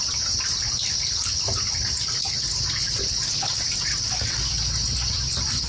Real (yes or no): yes